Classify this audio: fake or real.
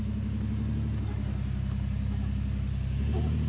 real